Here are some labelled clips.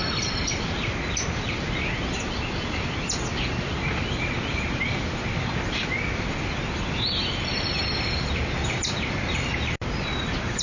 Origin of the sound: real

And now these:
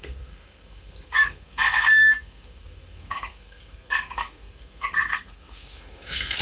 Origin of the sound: fake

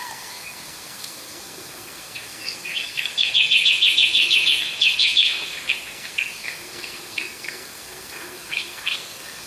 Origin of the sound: fake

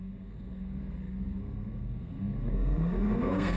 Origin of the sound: fake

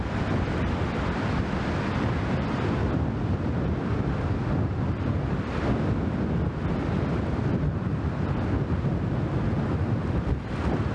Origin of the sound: real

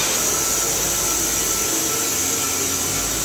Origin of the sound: real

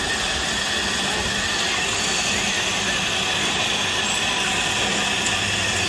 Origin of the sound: real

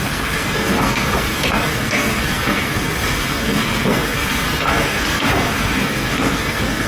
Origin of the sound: fake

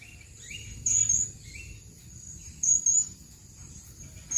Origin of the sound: real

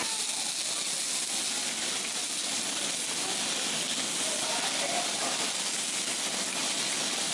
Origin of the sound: real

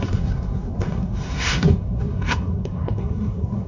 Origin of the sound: fake